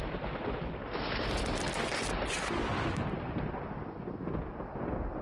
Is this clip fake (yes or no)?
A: no